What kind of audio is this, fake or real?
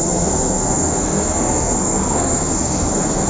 fake